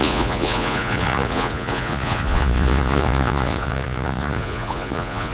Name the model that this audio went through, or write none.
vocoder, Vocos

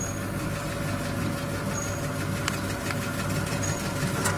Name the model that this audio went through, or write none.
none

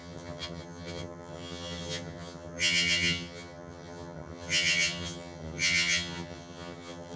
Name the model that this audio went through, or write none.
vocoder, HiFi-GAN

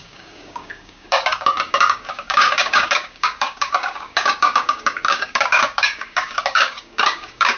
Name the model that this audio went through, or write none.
codec, DAC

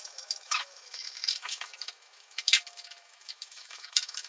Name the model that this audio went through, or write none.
autoencoder, DAC-VAE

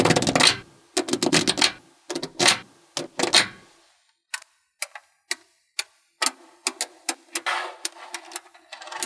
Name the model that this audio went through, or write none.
none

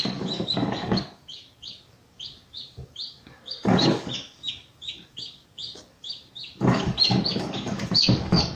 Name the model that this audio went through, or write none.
codec, DAC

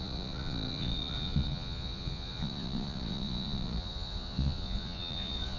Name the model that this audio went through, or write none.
vocoder, Vocos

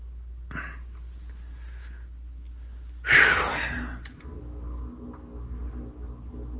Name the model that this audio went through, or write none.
none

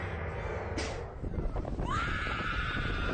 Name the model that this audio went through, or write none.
none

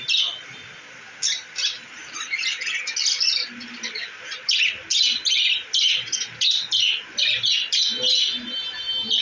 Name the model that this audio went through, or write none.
none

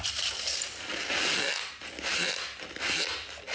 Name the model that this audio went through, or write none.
vocoder, BigVGAN v2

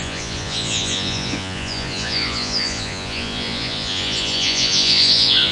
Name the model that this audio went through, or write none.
vocoder, Vocos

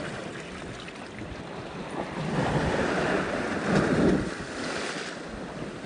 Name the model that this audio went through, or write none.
none